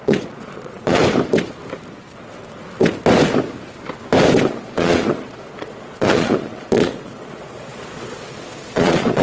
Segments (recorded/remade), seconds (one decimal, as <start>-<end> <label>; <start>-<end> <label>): 0.0-1.0 remade; 1.0-4.5 recorded; 4.5-9.2 remade